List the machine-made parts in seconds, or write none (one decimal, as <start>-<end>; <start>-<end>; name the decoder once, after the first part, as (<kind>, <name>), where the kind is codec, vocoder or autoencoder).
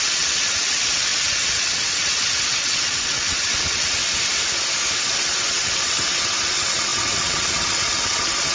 0.0-4.0 (vocoder, WaveNeXt); 5.0-8.5